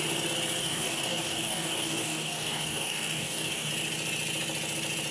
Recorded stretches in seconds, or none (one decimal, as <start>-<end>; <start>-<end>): 0.0-0.6; 3.7-5.1